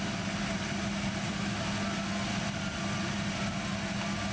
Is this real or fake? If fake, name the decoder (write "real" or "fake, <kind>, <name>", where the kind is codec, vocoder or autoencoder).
real